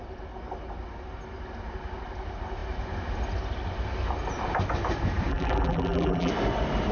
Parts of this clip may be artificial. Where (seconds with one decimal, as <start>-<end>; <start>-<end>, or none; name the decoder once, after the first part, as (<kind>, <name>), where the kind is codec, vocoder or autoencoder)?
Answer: 5.3-6.3 (vocoder, BigVGAN v2)